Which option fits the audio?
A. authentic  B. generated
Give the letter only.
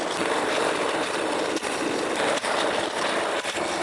A